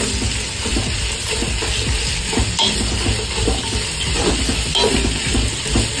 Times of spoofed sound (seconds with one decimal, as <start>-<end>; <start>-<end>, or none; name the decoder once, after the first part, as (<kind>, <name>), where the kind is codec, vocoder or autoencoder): none

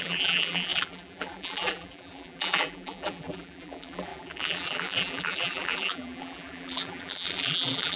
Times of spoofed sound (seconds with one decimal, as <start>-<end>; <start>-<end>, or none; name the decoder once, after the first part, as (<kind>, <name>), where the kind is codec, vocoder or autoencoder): 0.0-8.0 (vocoder, BigVGAN v2)

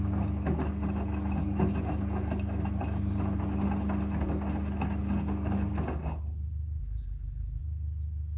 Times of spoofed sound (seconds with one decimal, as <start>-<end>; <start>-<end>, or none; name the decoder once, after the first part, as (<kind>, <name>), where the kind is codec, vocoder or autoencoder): 6.8-7.6 (vocoder, BigVGAN v2)

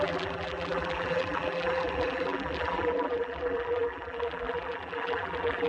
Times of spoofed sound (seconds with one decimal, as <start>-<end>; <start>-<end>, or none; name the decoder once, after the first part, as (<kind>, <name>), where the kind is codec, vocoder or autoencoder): 0.0-5.7 (vocoder, BigVGAN v2)

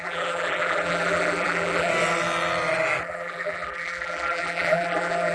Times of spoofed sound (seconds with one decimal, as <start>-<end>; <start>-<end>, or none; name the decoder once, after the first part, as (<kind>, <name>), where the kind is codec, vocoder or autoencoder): 0.0-1.9 (vocoder, BigVGAN v2); 3.0-5.3